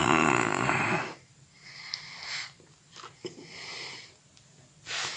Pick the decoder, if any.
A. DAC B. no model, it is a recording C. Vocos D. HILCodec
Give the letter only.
B